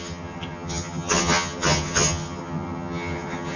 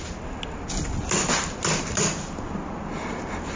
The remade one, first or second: first